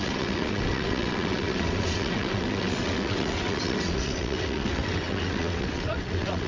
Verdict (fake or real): fake